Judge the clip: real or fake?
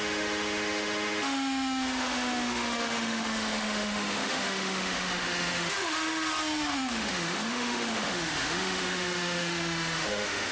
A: fake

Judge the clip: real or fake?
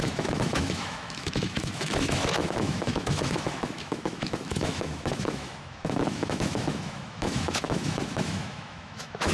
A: fake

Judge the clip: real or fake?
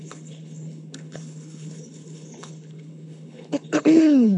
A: fake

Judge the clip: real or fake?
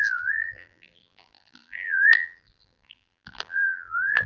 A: fake